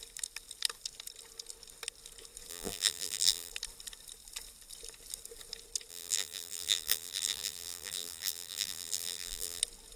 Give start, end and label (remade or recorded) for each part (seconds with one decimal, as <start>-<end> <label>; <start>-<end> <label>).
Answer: 0.0-2.5 recorded; 2.5-3.5 remade; 3.5-5.9 recorded; 5.9-9.6 remade; 9.6-10.0 recorded